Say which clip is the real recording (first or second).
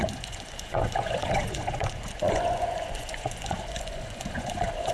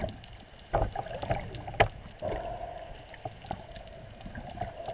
second